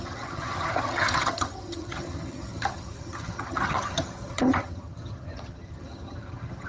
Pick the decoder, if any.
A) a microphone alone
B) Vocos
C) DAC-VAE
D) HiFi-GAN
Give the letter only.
D